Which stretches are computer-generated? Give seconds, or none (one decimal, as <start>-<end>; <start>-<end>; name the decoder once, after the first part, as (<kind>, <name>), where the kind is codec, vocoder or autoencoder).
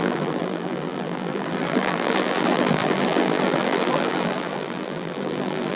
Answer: 0.0-5.8 (vocoder, BigVGAN v2)